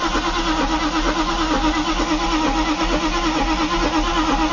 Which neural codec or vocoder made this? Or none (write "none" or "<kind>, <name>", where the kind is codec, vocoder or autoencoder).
none